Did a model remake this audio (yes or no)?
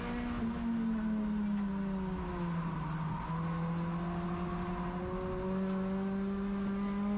no